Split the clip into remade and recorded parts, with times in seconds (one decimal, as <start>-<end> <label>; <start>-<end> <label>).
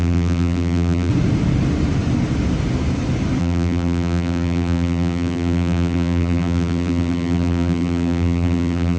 0.0-1.1 remade; 1.1-3.4 recorded; 3.4-9.0 remade